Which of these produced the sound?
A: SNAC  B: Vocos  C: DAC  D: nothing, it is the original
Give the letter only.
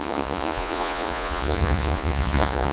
B